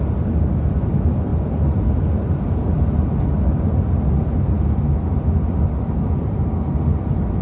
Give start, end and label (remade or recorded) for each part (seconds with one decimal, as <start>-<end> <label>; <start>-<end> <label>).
0.0-7.4 recorded